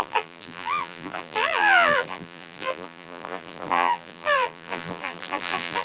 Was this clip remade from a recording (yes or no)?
yes